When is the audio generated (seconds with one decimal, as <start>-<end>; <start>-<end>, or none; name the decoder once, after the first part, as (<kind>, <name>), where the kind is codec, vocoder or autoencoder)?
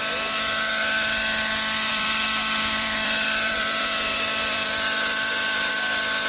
1.9-5.7 (vocoder, BigVGAN v2)